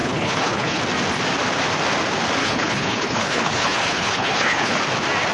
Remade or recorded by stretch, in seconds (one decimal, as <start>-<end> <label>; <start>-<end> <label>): 0.0-0.8 remade; 0.8-2.4 recorded; 2.4-4.8 remade; 4.8-5.3 recorded